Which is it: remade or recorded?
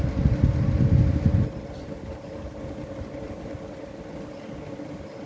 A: recorded